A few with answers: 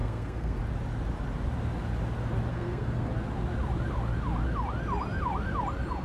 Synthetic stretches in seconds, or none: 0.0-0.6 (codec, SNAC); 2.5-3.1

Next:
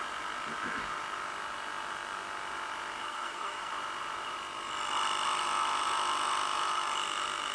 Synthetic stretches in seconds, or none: 3.0-3.7 (codec, SNAC)

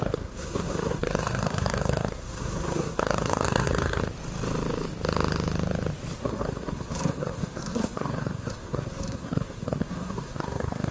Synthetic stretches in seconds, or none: 0.0-4.0 (codec, SNAC); 6.2-10.9

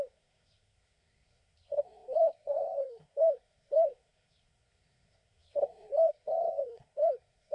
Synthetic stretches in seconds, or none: 0.0-7.5 (codec, SNAC)

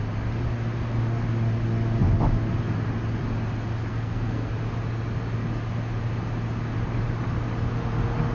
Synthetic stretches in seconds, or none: 3.9-4.5 (codec, SNAC)

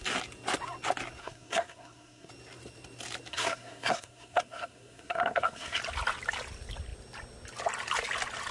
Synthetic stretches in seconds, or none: 1.2-2.3 (codec, SNAC); 3.3-5.8

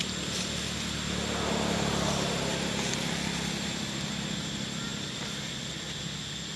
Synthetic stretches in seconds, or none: none

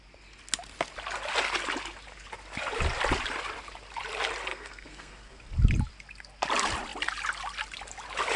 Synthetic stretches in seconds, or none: 4.5-5.4 (codec, SNAC)